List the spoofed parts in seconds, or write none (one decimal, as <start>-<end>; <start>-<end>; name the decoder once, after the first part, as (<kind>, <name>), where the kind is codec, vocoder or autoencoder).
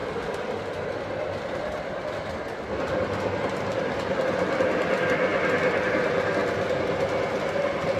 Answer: none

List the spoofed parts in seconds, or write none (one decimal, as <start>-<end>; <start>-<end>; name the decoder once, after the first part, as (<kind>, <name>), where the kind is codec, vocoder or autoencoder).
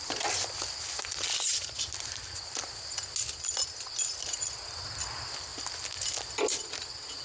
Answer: none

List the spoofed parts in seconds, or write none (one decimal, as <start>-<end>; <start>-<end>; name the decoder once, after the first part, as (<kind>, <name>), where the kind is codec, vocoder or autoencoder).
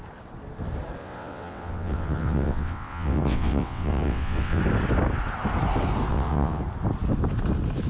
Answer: 1.0-4.6 (vocoder, WaveNeXt); 6.1-6.6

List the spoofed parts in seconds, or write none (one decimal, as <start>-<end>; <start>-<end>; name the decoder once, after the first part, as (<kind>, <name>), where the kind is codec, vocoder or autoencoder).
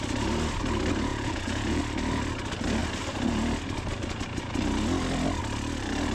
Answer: 1.1-1.8 (vocoder, Vocos)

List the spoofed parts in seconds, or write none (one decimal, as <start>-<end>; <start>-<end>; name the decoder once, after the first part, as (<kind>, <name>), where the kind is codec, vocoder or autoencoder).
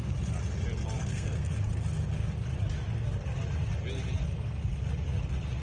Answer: 1.0-1.5 (codec, SNAC)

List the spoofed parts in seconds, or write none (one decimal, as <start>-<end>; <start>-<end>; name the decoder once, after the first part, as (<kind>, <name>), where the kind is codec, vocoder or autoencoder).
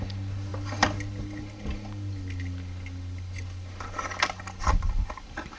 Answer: none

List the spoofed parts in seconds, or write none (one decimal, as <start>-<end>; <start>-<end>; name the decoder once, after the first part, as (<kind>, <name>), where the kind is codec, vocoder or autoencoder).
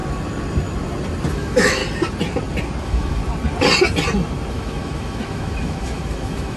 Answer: 1.3-1.8 (autoencoder, DAC-VAE); 2.8-3.2; 4.5-6.6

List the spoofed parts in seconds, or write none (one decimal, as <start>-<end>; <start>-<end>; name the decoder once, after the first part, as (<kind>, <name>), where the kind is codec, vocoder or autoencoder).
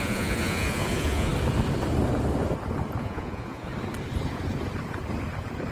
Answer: 0.0-1.3 (vocoder, Vocos); 3.0-3.7